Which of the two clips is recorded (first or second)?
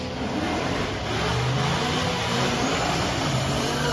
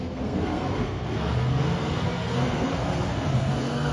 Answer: first